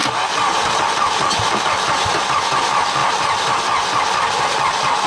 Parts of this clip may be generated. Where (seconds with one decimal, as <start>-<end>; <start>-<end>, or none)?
0.0-2.1; 3.0-4.4